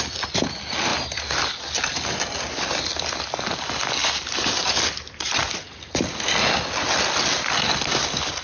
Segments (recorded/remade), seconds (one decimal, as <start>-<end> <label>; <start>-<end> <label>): 0.0-8.4 recorded